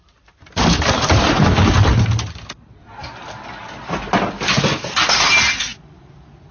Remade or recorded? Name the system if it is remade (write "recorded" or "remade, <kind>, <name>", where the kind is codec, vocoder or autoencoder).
recorded